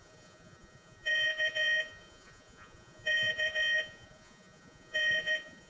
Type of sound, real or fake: fake